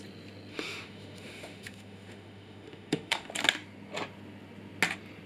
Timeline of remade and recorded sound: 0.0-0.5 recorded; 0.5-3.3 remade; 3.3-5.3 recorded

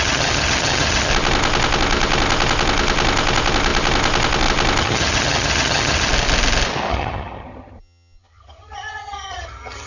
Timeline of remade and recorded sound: 0.0-1.1 remade; 1.1-4.8 recorded; 4.8-6.1 remade; 6.1-6.9 recorded; 6.9-9.9 remade

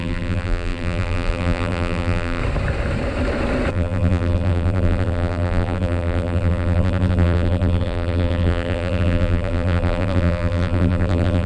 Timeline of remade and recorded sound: 0.0-2.4 remade; 2.4-3.7 recorded; 3.7-11.5 remade

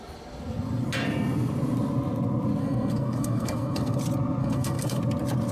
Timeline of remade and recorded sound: 0.0-2.6 recorded; 2.6-4.0 remade; 4.0-4.4 recorded; 4.4-5.0 remade; 5.0-5.5 recorded

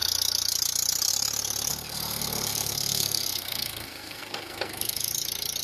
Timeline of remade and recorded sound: 0.0-1.7 recorded; 1.7-5.1 remade; 5.1-5.6 recorded

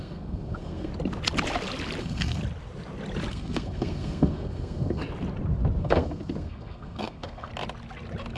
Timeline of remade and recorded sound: 0.0-0.9 remade; 0.9-2.0 recorded; 2.0-2.4 remade; 2.4-3.3 recorded; 3.3-5.0 remade; 5.0-5.8 recorded; 5.8-7.5 remade; 7.5-8.4 recorded

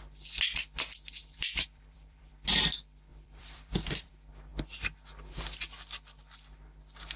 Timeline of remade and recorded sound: 0.0-1.2 recorded; 1.2-2.3 remade; 2.3-3.1 recorded; 3.1-4.1 remade; 4.1-7.2 recorded

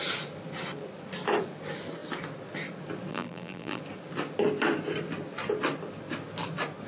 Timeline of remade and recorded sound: 0.0-3.1 recorded; 3.1-3.8 remade; 3.8-6.9 recorded